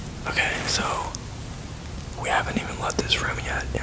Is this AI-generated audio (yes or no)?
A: no